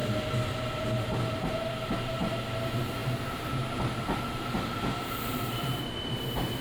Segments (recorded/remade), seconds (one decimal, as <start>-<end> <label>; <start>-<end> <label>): 0.0-6.6 recorded